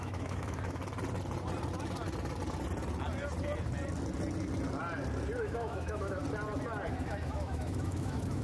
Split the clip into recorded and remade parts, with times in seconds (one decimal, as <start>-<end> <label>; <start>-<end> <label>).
0.0-0.8 remade; 0.8-5.4 recorded; 5.4-6.2 remade; 6.2-6.9 recorded; 6.9-8.4 remade